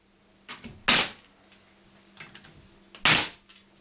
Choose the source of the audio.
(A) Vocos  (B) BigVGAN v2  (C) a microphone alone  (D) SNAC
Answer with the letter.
C